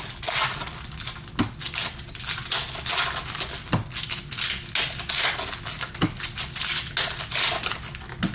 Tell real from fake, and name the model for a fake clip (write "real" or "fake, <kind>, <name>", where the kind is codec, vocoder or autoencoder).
real